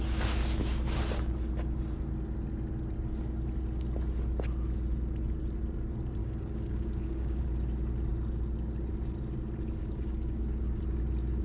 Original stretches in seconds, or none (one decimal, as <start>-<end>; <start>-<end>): 0.0-6.2; 7.4-9.8; 10.8-11.4